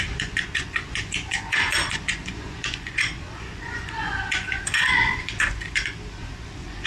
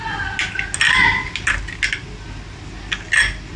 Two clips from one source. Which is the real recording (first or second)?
second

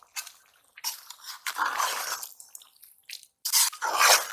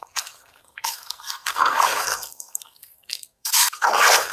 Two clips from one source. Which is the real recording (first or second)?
first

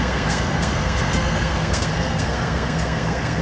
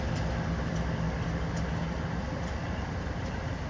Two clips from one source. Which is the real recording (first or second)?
second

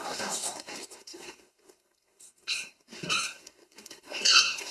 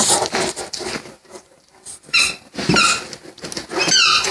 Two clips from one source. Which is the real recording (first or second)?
second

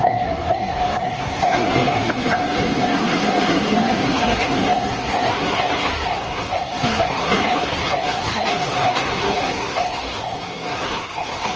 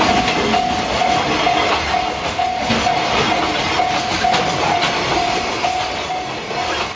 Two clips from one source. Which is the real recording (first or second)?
second